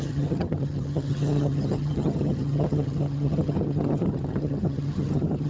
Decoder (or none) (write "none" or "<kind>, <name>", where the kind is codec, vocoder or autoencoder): vocoder, HiFi-GAN